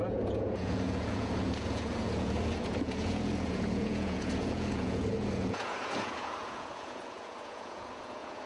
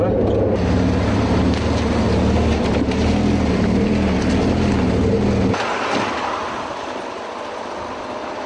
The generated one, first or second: first